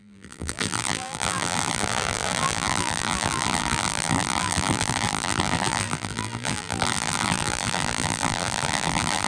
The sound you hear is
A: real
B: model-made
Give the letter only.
B